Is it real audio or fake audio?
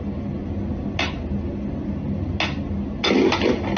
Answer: real